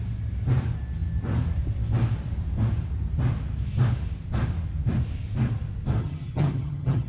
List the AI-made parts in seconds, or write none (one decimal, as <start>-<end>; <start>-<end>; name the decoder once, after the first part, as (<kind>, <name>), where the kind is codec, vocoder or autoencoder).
6.0-7.1 (vocoder, HiFi-GAN)